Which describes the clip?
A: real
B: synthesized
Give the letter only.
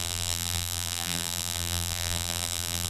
B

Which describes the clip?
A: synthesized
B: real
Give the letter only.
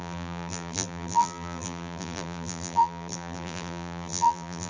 A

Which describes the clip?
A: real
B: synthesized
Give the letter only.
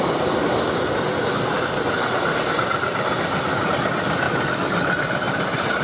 B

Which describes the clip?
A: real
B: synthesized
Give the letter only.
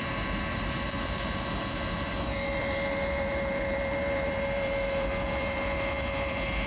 B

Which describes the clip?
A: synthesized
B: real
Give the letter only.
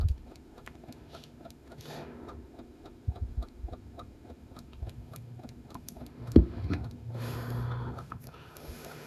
A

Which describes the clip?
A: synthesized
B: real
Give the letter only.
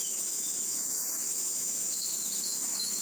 A